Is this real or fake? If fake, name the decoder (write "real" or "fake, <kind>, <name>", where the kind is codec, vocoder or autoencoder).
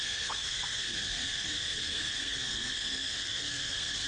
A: fake, codec, SNAC